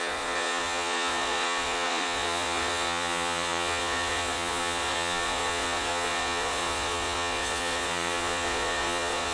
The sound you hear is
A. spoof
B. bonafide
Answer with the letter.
A